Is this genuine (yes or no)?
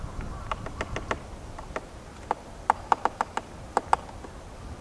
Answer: yes